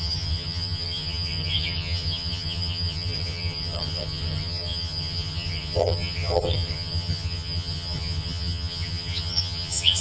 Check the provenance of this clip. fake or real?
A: fake